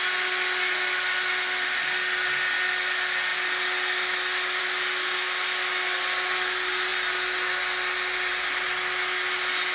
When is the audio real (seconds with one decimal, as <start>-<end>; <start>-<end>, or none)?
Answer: 0.0-9.7